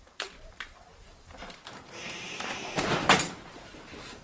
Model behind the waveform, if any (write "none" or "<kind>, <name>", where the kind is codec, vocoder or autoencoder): vocoder, BigVGAN v2